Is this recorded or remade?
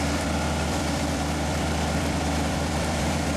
remade